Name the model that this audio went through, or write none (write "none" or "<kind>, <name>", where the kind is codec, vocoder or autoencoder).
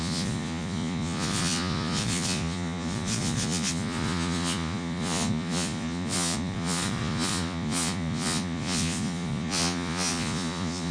vocoder, Vocos